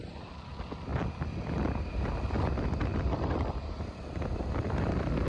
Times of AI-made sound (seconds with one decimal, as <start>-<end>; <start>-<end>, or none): none